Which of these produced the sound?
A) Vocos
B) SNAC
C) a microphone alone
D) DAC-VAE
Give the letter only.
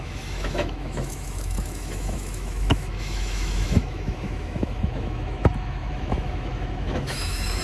D